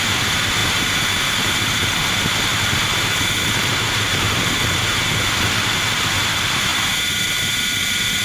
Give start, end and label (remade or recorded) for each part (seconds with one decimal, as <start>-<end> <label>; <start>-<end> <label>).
0.0-8.2 remade